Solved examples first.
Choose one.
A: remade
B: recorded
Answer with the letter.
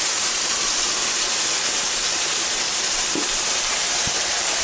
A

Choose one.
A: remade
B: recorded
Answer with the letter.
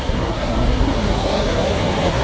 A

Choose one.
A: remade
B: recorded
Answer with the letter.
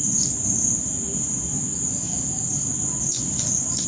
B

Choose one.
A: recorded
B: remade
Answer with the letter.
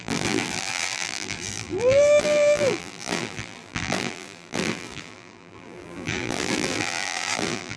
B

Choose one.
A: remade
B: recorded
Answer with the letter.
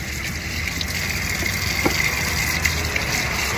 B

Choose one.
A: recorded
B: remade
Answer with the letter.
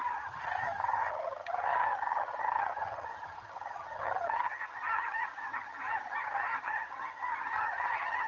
B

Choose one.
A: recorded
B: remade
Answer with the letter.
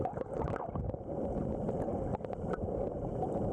A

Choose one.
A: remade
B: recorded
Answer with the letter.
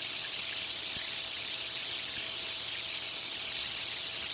B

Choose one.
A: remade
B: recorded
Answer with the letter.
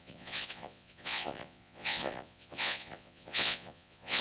A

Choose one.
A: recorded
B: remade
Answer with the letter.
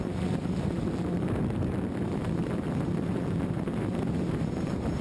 B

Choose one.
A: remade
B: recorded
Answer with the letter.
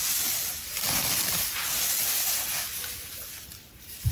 B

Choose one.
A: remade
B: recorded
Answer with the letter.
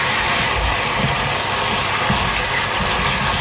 B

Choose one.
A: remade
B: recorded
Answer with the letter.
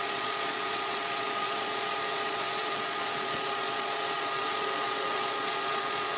A